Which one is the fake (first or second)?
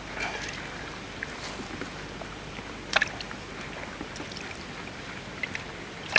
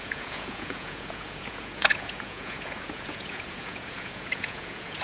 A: second